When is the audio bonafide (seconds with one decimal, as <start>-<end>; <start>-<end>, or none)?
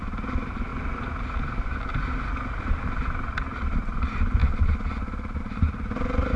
0.7-2.7; 4.4-5.4